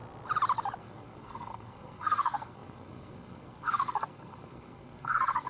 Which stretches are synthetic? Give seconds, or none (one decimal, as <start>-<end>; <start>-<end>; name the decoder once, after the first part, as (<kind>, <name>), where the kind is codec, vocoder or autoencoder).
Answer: 0.8-5.5 (codec, SNAC)